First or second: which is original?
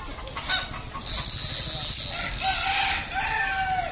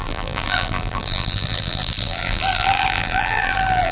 first